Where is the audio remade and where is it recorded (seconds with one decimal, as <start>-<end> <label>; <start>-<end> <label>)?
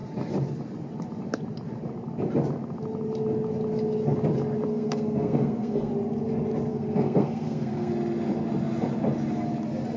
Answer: 0.0-4.7 recorded; 4.7-5.9 remade; 5.9-6.7 recorded; 6.7-7.9 remade; 7.9-10.0 recorded